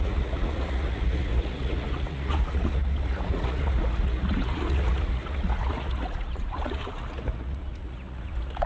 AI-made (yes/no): yes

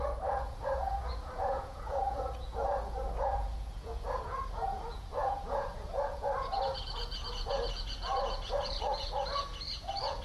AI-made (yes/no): yes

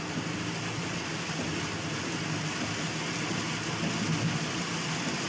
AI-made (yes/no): no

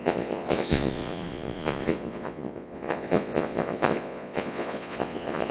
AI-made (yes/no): yes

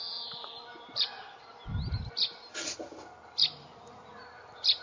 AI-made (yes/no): no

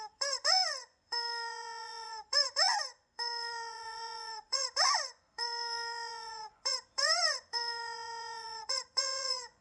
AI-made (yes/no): yes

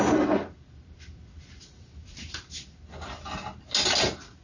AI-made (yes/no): no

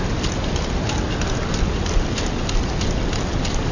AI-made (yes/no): no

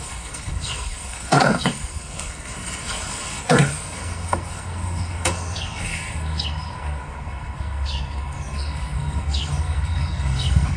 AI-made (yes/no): yes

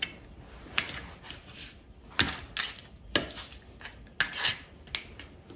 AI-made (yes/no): no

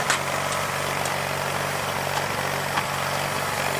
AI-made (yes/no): no